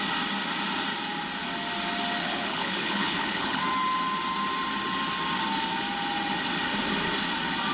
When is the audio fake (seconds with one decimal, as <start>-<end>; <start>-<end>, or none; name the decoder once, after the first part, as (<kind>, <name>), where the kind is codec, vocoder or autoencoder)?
2.2-3.6 (codec, HILCodec)